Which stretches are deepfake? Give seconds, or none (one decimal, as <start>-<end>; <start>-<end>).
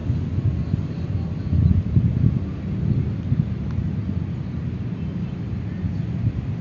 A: none